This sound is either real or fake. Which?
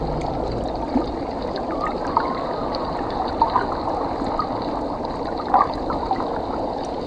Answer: real